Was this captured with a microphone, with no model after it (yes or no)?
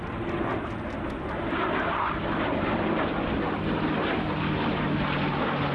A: yes